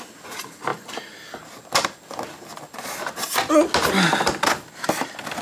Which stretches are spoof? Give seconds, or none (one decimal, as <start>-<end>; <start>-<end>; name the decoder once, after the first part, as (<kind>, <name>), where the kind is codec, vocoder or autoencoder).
none